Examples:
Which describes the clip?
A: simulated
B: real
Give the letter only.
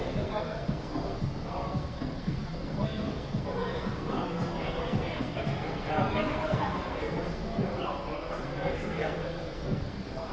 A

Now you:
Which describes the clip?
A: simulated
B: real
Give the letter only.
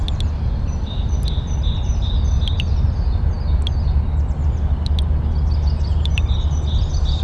B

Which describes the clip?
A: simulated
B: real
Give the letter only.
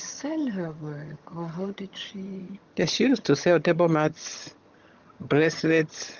A